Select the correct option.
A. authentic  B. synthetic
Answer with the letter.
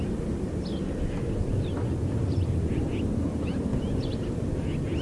A